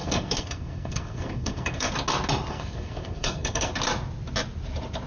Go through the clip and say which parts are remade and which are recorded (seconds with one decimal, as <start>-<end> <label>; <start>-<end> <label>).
0.0-1.9 remade; 1.9-2.5 recorded; 2.5-3.7 remade; 3.7-5.1 recorded

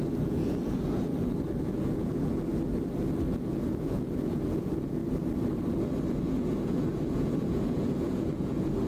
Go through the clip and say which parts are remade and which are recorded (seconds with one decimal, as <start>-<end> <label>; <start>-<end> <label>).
0.0-1.1 remade; 1.1-1.6 recorded; 1.6-2.5 remade; 2.5-3.3 recorded; 3.3-5.0 remade; 5.0-6.1 recorded; 6.1-8.9 remade

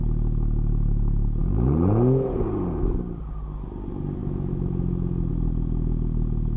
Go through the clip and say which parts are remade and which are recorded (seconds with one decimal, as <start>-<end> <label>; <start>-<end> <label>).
0.0-4.2 recorded; 4.2-5.3 remade; 5.3-6.6 recorded